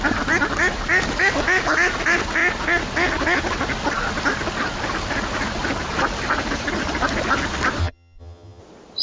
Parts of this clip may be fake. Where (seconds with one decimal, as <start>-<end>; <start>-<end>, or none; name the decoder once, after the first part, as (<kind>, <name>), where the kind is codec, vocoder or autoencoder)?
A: 7.8-8.6 (vocoder, HiFi-GAN)